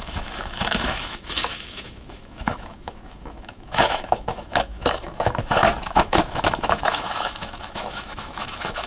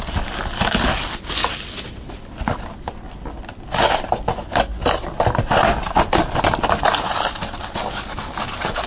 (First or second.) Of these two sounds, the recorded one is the second